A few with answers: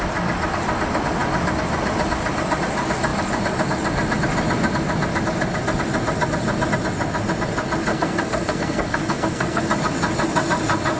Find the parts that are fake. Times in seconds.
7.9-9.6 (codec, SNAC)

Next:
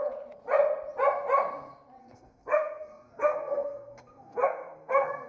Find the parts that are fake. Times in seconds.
2.0-5.3 (codec, SNAC)

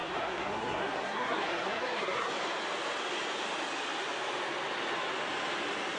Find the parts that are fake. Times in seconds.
0.0-2.3 (codec, SNAC)

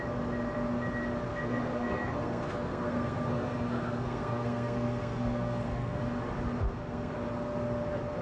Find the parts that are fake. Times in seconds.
1.3-6.0 (codec, SNAC); 6.6-7.1

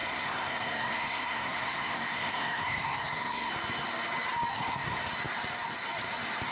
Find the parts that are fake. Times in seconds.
0.0-3.5 (codec, SNAC); 4.5-5.1

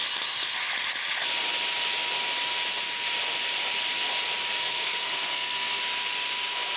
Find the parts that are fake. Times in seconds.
4.6-5.8 (codec, SNAC)

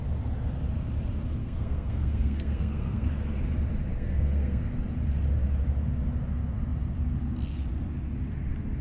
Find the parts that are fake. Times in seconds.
1.4-3.1 (codec, SNAC); 3.9-4.7

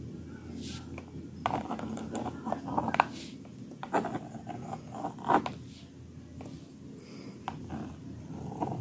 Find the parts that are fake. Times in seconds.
none